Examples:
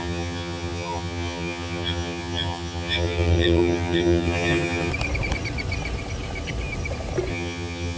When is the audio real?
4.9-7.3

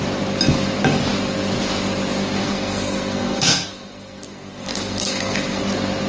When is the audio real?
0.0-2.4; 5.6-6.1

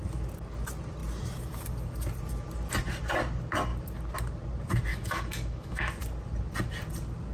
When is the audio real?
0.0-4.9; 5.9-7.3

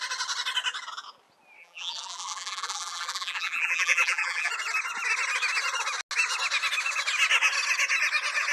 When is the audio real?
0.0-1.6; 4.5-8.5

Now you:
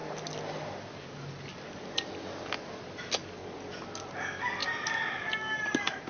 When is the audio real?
0.0-6.1

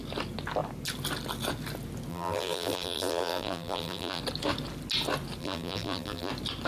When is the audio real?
0.0-2.1; 4.2-5.4; 6.3-6.7